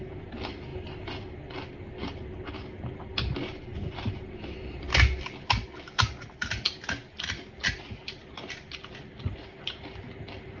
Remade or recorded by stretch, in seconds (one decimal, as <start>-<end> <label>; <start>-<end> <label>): 0.0-10.6 recorded